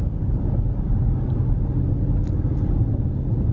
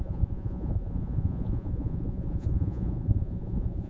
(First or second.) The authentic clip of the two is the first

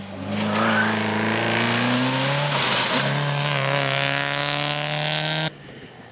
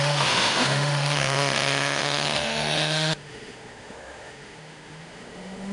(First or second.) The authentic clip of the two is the first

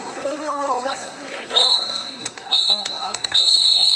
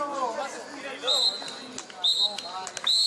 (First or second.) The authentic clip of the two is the second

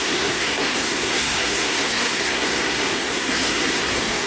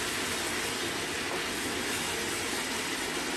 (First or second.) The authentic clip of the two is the second